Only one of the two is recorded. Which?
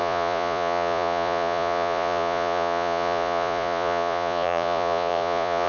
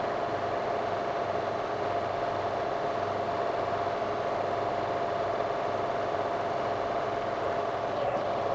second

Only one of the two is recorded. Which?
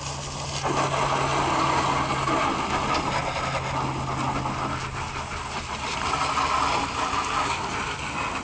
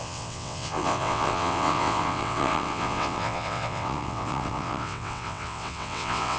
first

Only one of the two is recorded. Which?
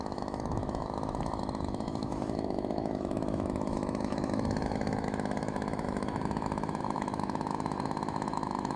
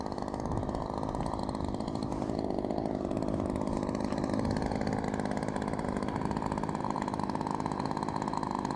second